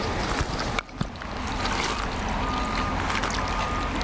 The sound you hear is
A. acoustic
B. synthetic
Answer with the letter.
A